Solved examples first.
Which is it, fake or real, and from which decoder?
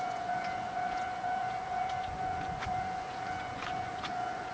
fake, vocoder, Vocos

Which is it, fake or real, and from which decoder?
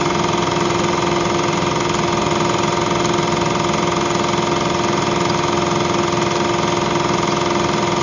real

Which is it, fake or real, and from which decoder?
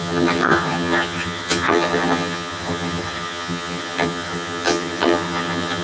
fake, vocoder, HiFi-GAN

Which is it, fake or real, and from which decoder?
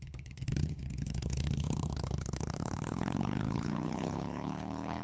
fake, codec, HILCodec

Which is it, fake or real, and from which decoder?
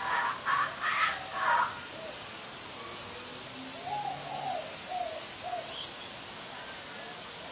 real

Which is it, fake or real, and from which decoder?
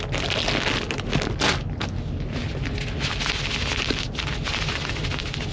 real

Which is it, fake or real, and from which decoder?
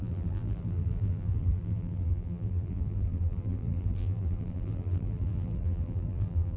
fake, vocoder, BigVGAN v2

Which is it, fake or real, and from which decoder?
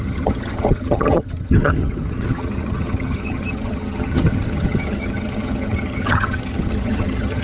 fake, vocoder, HiFi-GAN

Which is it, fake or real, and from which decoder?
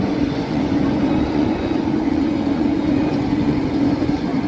fake, vocoder, Vocos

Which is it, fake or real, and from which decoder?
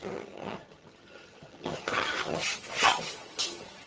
fake, vocoder, HiFi-GAN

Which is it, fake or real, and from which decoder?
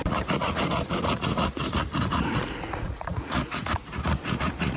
fake, vocoder, Vocos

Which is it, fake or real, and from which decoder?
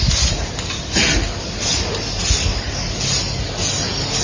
real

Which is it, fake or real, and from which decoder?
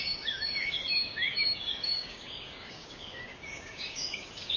fake, codec, DAC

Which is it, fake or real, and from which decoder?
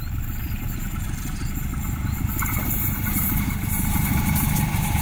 fake, vocoder, BigVGAN v2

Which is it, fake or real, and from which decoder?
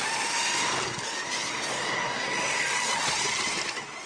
real